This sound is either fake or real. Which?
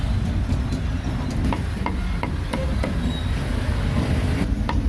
real